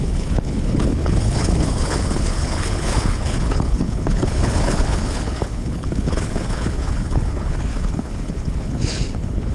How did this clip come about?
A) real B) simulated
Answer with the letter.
B